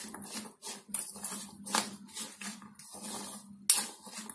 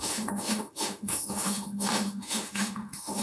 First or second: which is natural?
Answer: first